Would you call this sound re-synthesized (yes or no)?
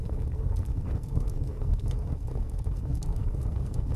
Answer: yes